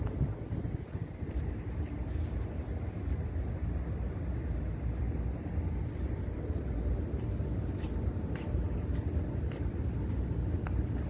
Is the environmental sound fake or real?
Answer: real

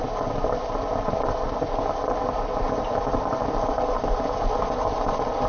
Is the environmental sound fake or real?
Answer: real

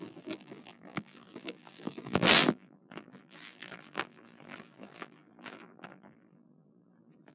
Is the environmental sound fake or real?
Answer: fake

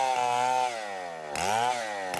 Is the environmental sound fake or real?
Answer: real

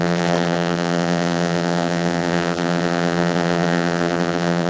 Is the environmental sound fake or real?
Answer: fake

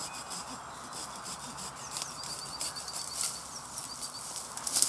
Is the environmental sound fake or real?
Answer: real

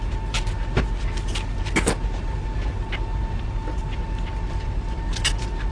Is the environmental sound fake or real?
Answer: real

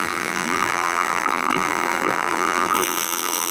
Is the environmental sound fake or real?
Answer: fake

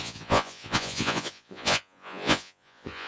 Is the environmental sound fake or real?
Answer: fake